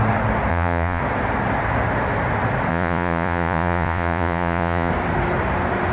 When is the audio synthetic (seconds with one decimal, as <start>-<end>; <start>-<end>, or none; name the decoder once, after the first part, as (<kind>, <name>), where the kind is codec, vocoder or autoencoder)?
0.5-1.0 (vocoder, Vocos); 2.7-4.9